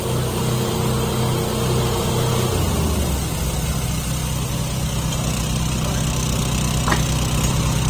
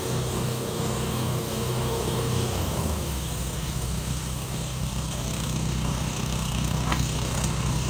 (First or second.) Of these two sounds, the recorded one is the first